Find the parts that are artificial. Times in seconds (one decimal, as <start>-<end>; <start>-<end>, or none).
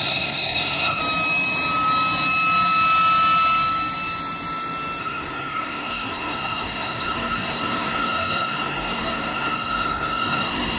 0.0-1.0; 5.0-10.8